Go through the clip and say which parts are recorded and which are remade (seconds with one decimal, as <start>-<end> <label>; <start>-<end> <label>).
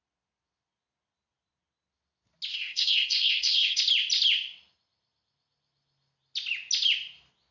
0.0-2.5 recorded; 2.5-3.8 remade; 3.8-7.5 recorded